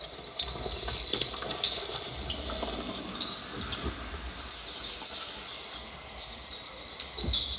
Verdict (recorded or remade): recorded